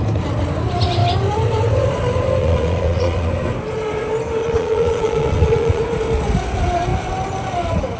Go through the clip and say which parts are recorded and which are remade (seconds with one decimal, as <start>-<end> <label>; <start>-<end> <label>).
0.0-2.4 recorded; 2.4-3.3 remade; 3.3-4.4 recorded; 4.4-5.8 remade; 5.8-8.0 recorded